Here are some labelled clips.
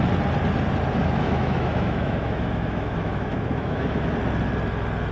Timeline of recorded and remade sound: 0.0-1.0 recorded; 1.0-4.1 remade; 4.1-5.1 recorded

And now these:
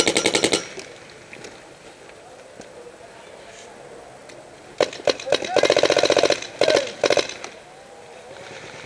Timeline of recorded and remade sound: 0.0-8.9 recorded

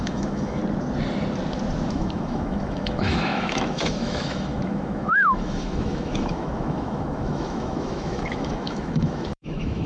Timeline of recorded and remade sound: 0.0-0.6 remade; 0.6-1.9 recorded; 1.9-9.9 remade

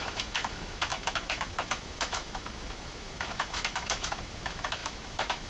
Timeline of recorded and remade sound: 0.0-5.5 remade

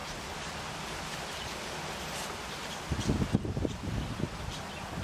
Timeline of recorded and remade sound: 0.0-5.0 recorded

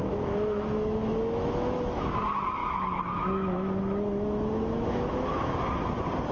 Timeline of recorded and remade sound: 0.0-2.2 remade; 2.2-2.6 recorded; 2.6-5.6 remade; 5.6-6.3 recorded